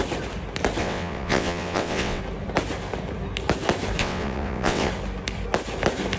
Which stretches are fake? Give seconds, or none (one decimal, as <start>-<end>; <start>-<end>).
0.8-2.2; 4.0-4.9